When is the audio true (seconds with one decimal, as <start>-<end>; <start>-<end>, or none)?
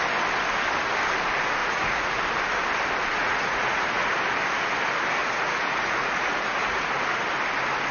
0.0-1.6; 2.2-3.1; 4.1-5.2; 7.2-7.9